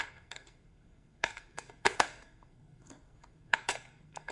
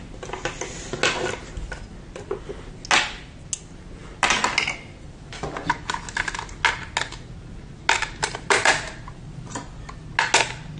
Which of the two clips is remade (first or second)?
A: first